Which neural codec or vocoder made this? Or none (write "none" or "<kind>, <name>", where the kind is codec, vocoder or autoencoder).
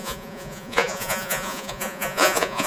vocoder, Vocos